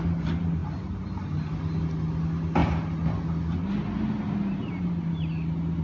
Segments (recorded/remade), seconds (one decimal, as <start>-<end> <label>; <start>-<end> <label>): 0.0-5.8 recorded